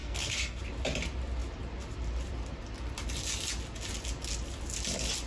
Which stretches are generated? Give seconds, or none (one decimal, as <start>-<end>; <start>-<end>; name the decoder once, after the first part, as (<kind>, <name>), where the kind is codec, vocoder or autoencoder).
0.0-0.6 (codec, SNAC)